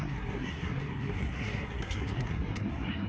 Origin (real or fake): fake